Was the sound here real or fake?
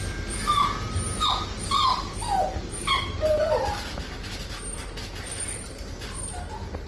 real